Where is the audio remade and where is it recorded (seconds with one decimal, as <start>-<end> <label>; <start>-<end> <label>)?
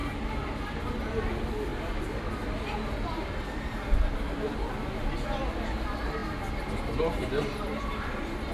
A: 0.0-8.5 recorded